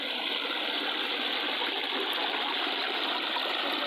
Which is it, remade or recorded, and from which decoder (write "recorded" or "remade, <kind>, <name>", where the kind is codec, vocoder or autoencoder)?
recorded